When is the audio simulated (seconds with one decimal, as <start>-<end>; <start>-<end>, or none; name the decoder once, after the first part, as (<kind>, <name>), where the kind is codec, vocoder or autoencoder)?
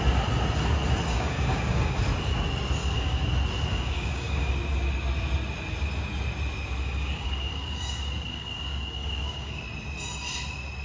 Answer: 1.1-2.0 (codec, DAC); 2.8-3.3; 3.7-4.5; 6.8-9.6